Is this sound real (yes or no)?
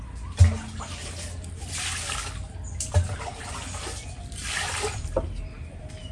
yes